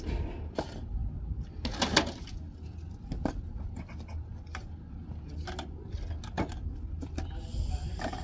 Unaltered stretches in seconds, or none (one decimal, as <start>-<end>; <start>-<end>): 0.0-8.2